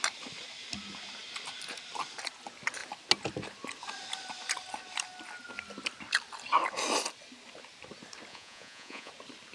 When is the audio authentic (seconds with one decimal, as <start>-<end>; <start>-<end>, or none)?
0.0-8.3; 9.1-9.5